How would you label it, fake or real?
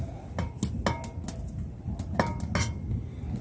real